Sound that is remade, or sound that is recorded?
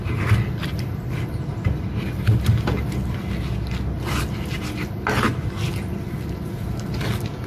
recorded